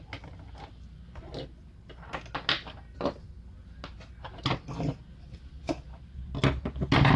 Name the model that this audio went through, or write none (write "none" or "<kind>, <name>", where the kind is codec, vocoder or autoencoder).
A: none